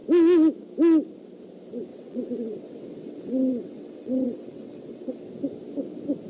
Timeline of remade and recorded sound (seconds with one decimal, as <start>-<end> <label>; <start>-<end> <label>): 0.0-1.9 recorded; 1.9-5.3 remade; 5.3-6.3 recorded